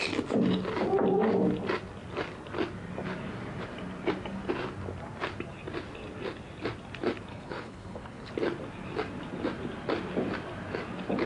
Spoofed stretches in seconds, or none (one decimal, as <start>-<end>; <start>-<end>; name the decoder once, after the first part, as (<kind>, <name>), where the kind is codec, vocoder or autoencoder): 7.3-8.3 (codec, HILCodec)